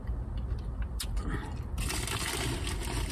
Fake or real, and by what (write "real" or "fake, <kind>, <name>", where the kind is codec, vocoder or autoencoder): real